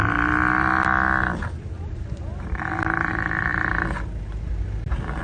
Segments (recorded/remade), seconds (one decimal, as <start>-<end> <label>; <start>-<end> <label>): 0.0-5.2 recorded